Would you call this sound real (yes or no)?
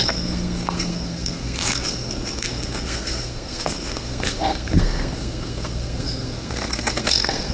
no